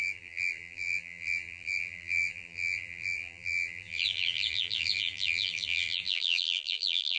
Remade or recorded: remade